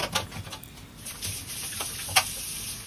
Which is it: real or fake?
real